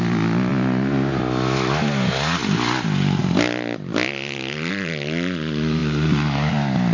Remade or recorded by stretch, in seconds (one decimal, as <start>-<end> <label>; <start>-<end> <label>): 0.0-6.9 recorded